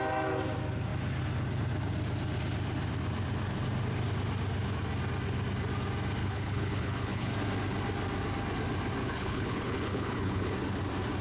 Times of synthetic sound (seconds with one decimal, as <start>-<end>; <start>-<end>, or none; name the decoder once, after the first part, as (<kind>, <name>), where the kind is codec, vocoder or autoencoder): 6.2-7.3 (codec, HILCodec); 9.0-10.5

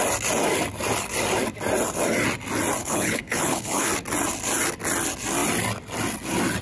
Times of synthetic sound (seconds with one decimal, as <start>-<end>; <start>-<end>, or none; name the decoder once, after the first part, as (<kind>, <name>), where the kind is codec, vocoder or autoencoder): 2.8-3.9 (codec, HILCodec)

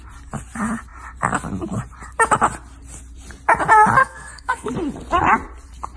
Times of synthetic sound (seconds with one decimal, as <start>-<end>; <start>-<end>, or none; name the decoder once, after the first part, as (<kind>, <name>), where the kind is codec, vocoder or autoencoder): 4.0-4.7 (codec, SNAC)

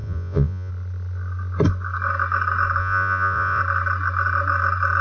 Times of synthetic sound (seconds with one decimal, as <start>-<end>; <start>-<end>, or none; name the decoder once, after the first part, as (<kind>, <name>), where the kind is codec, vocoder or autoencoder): 0.0-0.7 (vocoder, Vocos); 2.8-3.6

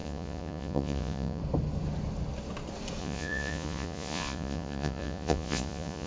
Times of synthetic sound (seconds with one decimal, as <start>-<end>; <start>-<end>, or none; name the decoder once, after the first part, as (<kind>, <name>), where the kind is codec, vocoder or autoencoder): 0.0-1.4 (vocoder, Vocos); 3.0-6.1

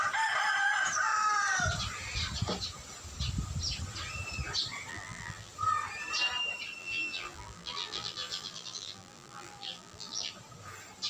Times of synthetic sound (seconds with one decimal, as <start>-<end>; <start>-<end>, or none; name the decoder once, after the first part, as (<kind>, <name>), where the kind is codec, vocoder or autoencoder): 4.9-5.5 (vocoder, BigVGAN v2); 6.8-10.3